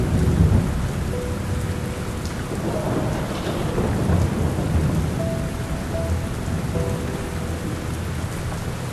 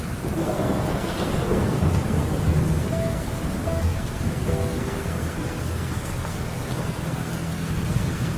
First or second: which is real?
first